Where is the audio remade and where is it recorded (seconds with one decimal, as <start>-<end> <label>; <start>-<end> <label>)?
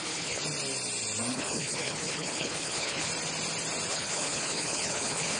0.0-0.4 remade; 0.4-1.3 recorded; 1.3-3.1 remade; 3.1-3.9 recorded; 3.9-5.4 remade